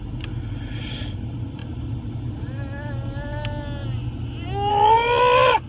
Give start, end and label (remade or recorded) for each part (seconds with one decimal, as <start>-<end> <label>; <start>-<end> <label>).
0.0-5.7 recorded

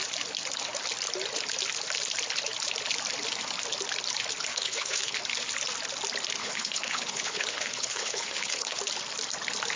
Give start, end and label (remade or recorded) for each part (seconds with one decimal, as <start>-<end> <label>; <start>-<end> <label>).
0.0-4.5 recorded; 4.5-5.2 remade; 5.2-6.4 recorded; 6.4-8.8 remade; 8.8-9.8 recorded

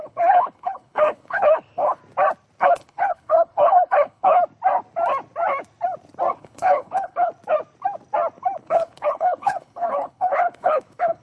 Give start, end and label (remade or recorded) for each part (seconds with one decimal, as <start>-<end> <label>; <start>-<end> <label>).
0.0-2.0 remade; 2.0-2.6 recorded; 2.6-4.4 remade; 4.4-6.3 recorded; 6.3-7.3 remade; 7.3-8.6 recorded; 8.6-11.2 remade

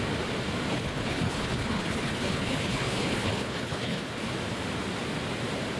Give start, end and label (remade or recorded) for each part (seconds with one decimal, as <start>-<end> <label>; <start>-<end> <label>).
0.0-0.7 recorded; 0.7-4.2 remade; 4.2-5.8 recorded

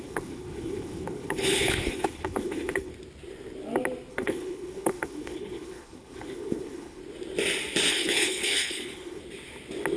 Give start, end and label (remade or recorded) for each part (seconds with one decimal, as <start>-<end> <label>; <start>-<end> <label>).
0.0-2.9 remade; 2.9-4.1 recorded; 4.1-7.0 remade; 7.0-7.9 recorded; 7.9-9.2 remade; 9.2-10.0 recorded

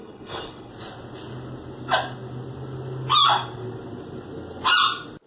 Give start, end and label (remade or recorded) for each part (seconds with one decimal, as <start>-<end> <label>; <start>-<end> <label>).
0.0-0.7 remade; 0.7-5.3 recorded

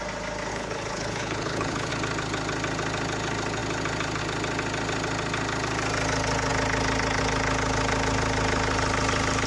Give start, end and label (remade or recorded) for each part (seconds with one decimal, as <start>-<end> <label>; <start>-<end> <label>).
0.0-0.5 recorded; 0.5-1.9 remade; 1.9-9.5 recorded